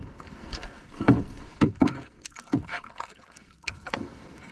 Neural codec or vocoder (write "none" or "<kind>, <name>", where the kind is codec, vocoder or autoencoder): codec, SNAC